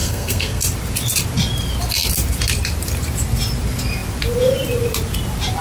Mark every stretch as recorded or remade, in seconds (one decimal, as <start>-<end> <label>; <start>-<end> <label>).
0.0-0.6 remade; 0.6-5.6 recorded